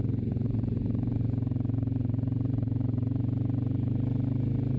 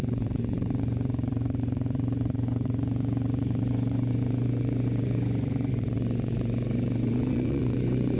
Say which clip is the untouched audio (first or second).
first